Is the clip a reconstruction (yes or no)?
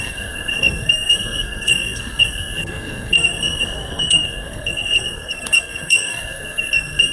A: yes